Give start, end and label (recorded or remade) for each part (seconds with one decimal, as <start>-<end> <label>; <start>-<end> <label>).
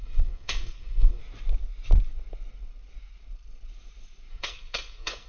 0.0-1.2 remade; 1.2-4.3 recorded; 4.3-5.3 remade